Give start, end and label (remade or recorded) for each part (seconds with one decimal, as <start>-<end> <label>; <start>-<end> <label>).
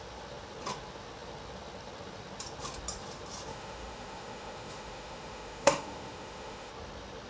0.0-3.5 recorded; 3.5-6.7 remade; 6.7-7.3 recorded